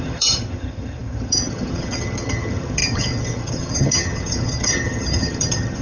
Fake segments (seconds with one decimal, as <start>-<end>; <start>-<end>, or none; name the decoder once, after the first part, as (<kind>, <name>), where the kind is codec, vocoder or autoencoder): 0.0-5.8 (vocoder, HiFi-GAN)